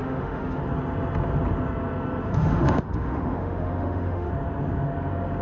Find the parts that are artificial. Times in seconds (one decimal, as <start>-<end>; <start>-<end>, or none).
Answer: 0.0-0.6; 2.3-4.3

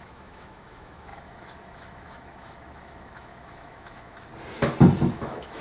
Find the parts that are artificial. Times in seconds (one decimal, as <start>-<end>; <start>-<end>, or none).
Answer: 0.0-4.3; 5.1-5.6